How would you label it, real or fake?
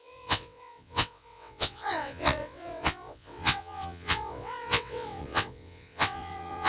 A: fake